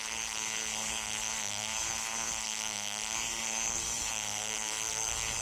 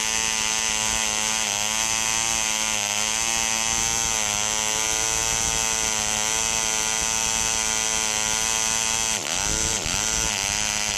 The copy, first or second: first